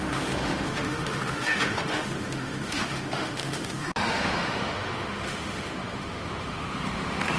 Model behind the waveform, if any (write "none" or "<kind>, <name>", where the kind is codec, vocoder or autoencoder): autoencoder, DAC-VAE